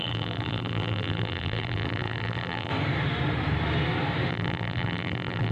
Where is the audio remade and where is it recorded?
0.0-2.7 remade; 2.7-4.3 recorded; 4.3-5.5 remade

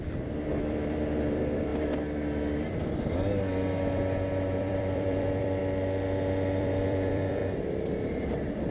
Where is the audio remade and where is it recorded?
0.0-1.7 remade; 1.7-4.6 recorded; 4.6-5.6 remade; 5.6-6.6 recorded; 6.6-7.4 remade; 7.4-8.7 recorded

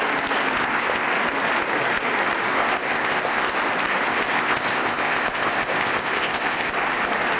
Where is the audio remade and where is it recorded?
0.0-0.6 recorded; 0.6-1.1 remade; 1.1-2.5 recorded; 2.5-3.5 remade; 3.5-4.1 recorded; 4.1-6.7 remade; 6.7-7.4 recorded

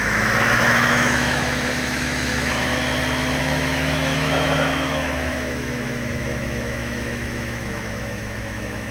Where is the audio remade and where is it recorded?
0.0-2.7 remade; 2.7-3.4 recorded; 3.4-8.9 remade

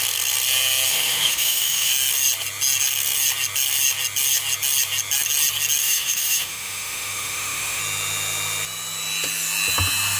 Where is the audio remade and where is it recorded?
0.0-0.9 recorded; 0.9-1.9 remade; 1.9-5.8 recorded; 5.8-7.8 remade; 7.8-10.2 recorded